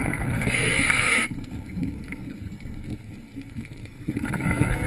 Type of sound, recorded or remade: remade